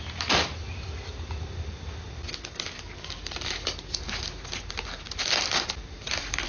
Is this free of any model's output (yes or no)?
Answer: yes